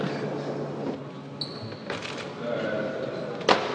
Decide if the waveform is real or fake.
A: real